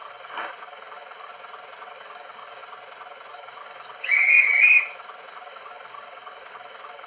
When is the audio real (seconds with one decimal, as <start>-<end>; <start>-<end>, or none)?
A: 1.3-1.9; 2.6-3.3; 4.5-5.3